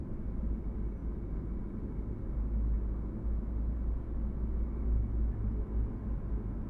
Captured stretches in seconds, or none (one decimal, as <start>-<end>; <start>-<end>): 0.0-6.7